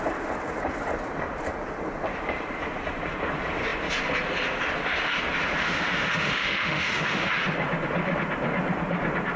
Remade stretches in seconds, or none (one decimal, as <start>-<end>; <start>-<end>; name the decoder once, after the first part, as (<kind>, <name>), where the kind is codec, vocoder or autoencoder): 5.6-7.3 (autoencoder, DAC-VAE)